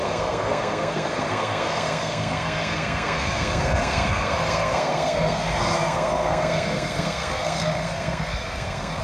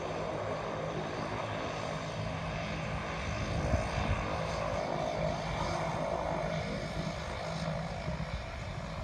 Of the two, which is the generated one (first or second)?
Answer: first